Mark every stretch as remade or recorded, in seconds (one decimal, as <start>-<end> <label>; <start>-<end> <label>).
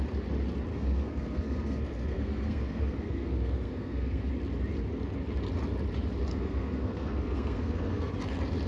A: 0.0-0.7 recorded; 0.7-4.3 remade; 4.3-6.3 recorded; 6.3-8.1 remade; 8.1-8.7 recorded